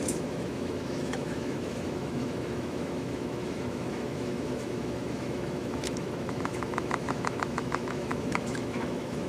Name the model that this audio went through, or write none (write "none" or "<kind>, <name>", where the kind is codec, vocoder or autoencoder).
autoencoder, DAC-VAE